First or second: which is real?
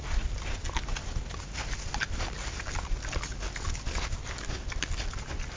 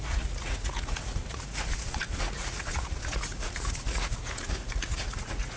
first